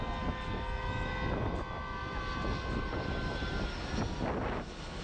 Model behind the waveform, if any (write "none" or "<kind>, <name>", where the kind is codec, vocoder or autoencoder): none